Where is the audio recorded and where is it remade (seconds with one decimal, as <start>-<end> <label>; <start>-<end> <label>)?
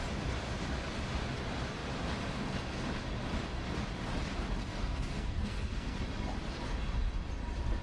0.0-4.6 recorded; 4.6-6.0 remade; 6.0-7.8 recorded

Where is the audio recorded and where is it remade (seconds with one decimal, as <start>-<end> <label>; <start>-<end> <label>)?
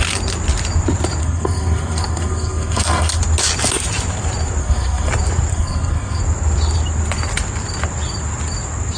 0.0-1.2 recorded; 1.2-3.2 remade; 3.2-4.6 recorded; 4.6-5.1 remade; 5.1-5.5 recorded; 5.5-6.2 remade; 6.2-9.0 recorded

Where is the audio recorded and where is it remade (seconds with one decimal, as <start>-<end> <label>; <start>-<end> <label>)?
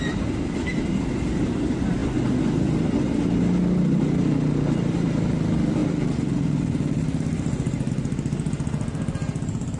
0.0-9.8 recorded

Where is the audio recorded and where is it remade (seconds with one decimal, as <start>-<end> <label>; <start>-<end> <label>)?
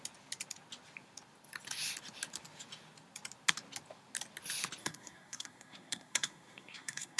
0.0-4.8 recorded; 4.8-7.2 remade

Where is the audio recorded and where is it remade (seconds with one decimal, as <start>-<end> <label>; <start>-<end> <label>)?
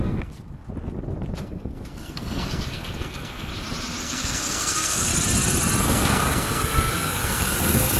0.0-0.6 remade; 0.6-1.4 recorded; 1.4-3.5 remade; 3.5-4.0 recorded; 4.0-5.1 remade; 5.1-5.8 recorded; 5.8-8.0 remade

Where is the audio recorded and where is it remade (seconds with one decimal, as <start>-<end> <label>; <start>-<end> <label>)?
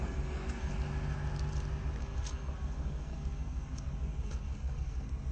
0.0-0.7 remade; 0.7-2.0 recorded; 2.0-5.3 remade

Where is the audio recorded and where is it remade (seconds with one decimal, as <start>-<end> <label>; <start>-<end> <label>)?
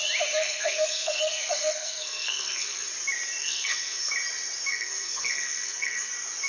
0.0-0.4 recorded; 0.4-2.9 remade; 2.9-3.4 recorded; 3.4-4.1 remade; 4.1-4.7 recorded; 4.7-6.1 remade; 6.1-6.5 recorded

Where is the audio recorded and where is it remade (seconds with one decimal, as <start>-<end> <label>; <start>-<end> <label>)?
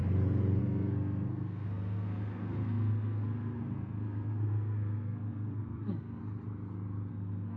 0.0-0.6 recorded; 0.6-6.2 remade; 6.2-7.1 recorded; 7.1-7.6 remade